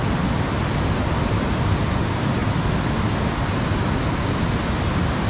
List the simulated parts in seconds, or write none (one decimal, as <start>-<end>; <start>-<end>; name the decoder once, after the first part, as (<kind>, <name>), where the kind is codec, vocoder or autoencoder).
none